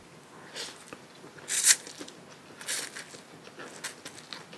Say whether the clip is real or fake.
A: real